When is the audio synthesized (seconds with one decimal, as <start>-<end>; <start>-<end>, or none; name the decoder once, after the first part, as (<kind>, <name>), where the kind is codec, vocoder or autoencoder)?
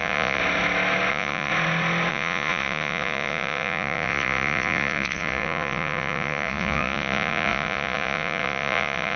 0.0-0.4 (vocoder, Vocos); 1.1-1.5; 2.1-9.2